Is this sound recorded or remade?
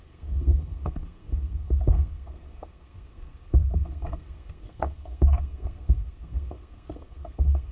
remade